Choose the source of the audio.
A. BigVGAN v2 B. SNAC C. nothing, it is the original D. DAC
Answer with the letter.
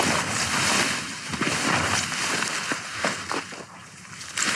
C